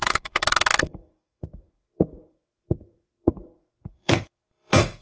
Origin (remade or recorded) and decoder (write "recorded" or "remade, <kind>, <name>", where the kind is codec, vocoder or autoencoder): remade, codec, SNAC